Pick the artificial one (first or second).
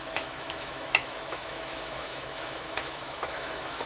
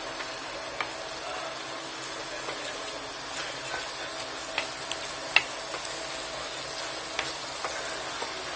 first